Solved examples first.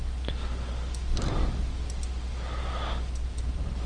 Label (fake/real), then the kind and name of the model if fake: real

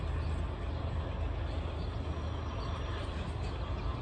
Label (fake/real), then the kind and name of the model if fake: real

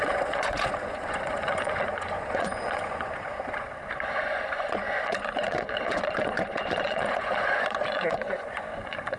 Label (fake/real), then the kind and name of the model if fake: fake, vocoder, Vocos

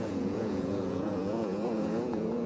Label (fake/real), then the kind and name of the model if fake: fake, vocoder, Vocos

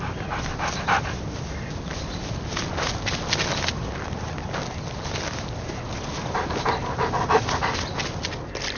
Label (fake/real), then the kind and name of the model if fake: real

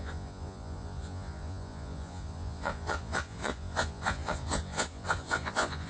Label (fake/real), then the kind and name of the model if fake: fake, vocoder, Vocos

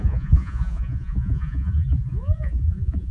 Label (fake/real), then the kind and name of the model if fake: fake, vocoder, Vocos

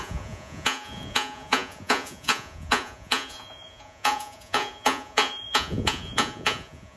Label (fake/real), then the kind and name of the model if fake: fake, vocoder, Vocos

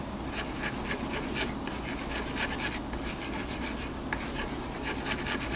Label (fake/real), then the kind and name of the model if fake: real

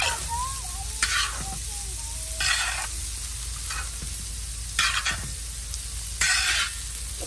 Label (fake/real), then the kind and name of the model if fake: real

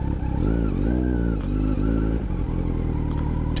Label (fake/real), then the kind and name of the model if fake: real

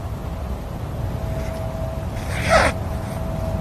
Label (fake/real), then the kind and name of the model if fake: real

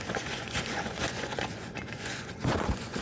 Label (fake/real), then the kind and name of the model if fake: fake, vocoder, Vocos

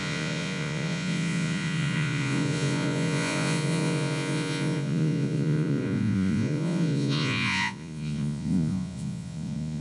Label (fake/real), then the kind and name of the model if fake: fake, vocoder, Vocos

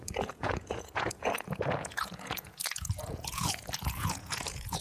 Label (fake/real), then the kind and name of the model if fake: fake, vocoder, Vocos